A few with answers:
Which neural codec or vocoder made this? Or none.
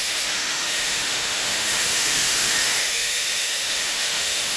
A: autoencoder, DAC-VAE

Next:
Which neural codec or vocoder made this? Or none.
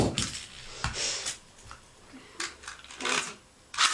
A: none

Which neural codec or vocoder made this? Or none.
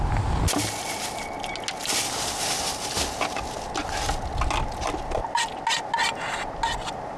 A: none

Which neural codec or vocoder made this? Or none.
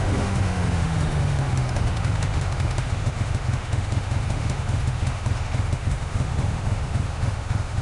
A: autoencoder, DAC-VAE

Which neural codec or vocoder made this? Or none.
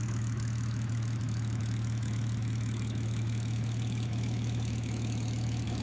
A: autoencoder, DAC-VAE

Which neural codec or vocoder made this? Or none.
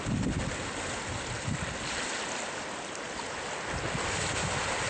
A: none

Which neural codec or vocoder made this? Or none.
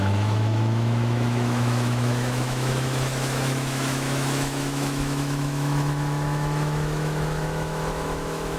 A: autoencoder, DAC-VAE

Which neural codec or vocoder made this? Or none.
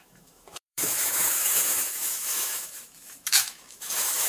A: autoencoder, DAC-VAE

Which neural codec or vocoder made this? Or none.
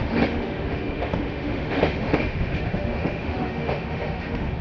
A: autoencoder, DAC-VAE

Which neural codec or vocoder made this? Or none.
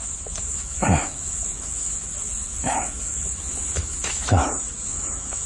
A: autoencoder, DAC-VAE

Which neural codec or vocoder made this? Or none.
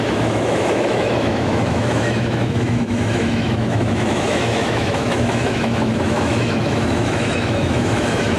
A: autoencoder, DAC-VAE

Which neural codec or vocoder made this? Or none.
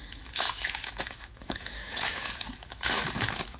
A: autoencoder, DAC-VAE